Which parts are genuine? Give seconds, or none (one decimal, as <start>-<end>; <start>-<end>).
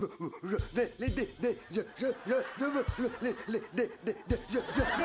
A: 0.0-4.0